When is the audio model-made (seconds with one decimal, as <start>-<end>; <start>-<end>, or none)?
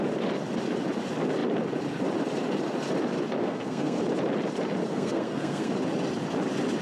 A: 3.4-4.0; 4.8-5.7